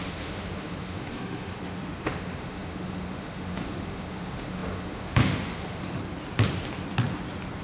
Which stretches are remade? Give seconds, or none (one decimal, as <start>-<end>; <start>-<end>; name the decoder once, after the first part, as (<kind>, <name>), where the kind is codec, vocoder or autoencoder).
0.0-6.0 (autoencoder, DAC-VAE)